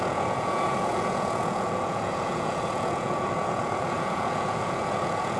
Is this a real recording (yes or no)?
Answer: no